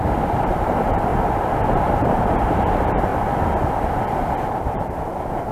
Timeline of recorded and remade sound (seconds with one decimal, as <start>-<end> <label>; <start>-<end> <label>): 0.0-1.1 remade; 1.1-1.7 recorded; 1.7-3.1 remade; 3.1-4.4 recorded; 4.4-5.5 remade